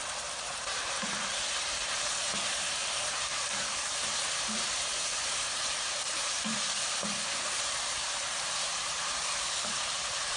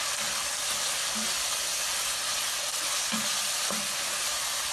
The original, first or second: second